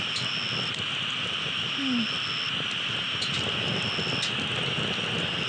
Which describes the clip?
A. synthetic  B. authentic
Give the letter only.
B